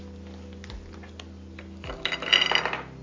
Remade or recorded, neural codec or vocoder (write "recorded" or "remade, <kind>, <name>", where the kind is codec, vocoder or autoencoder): recorded